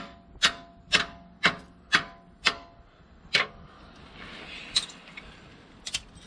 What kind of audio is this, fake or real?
real